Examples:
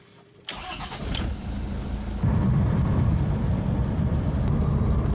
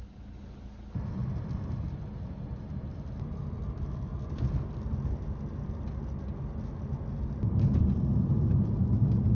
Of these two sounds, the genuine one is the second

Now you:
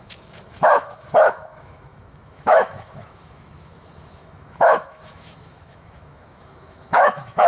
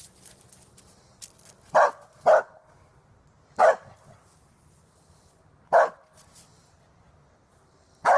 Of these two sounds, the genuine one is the second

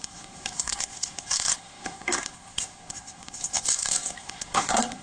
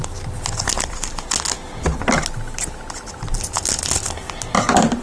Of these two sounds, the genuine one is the second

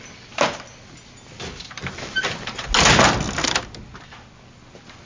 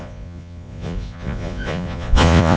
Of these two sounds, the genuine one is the first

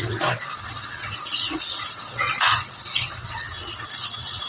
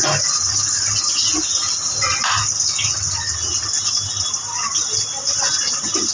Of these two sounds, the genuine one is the second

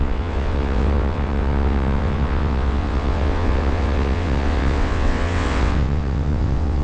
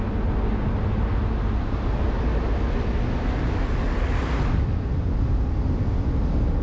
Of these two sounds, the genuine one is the second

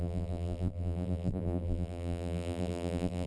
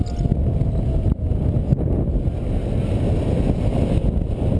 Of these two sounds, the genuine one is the second